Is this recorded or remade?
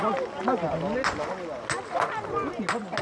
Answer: recorded